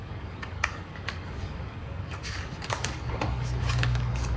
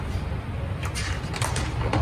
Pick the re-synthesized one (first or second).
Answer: first